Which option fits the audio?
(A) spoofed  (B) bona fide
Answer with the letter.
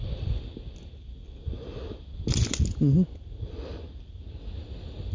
B